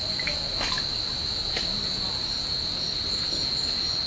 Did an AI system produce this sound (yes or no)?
no